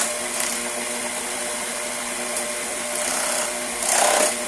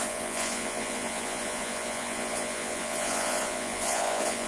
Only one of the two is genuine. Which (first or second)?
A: first